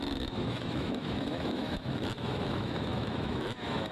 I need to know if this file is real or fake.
fake